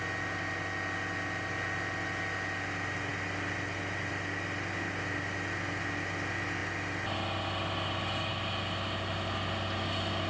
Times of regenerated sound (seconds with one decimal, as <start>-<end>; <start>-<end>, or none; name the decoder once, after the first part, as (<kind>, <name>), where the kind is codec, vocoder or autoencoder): none